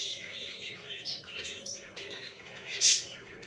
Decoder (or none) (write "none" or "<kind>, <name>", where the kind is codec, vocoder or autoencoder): codec, SNAC